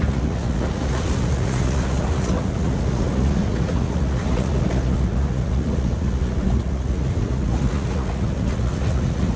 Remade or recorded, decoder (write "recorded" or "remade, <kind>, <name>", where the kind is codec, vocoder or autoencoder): remade, vocoder, Vocos